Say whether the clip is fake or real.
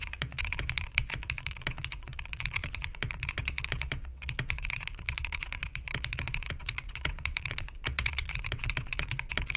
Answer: fake